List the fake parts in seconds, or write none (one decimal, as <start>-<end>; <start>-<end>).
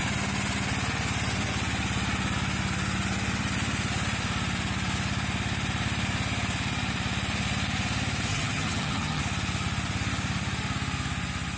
8.3-9.2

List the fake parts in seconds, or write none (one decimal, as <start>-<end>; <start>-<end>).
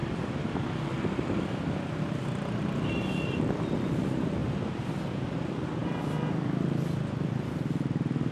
4.4-4.9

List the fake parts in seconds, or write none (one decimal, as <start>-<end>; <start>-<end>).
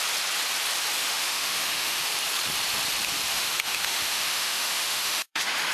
1.0-2.0; 3.3-5.7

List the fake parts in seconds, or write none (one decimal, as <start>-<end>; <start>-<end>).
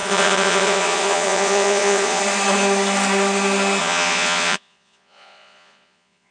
0.0-2.2; 3.8-6.3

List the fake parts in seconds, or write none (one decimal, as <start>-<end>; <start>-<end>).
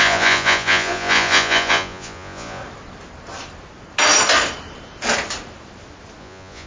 0.0-2.6; 6.2-6.7